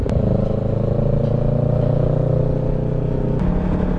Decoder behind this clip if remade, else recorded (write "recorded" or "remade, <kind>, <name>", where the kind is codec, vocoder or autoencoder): recorded